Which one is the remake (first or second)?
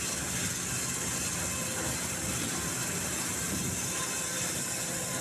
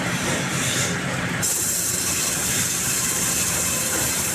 second